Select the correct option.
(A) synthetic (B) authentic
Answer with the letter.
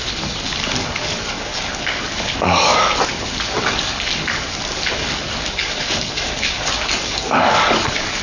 A